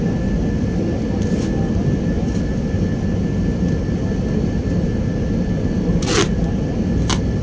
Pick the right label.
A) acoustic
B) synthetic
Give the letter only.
A